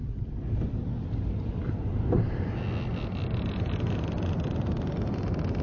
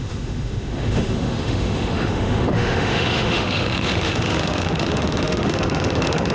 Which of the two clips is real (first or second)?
first